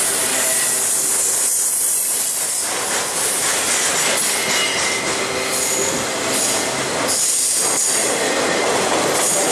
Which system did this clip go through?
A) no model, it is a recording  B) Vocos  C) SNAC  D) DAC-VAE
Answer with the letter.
A